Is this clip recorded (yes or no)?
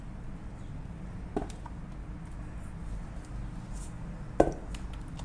yes